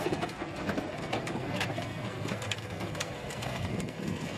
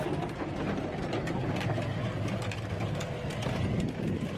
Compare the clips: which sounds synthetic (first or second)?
first